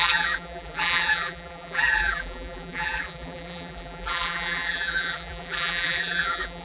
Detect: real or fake fake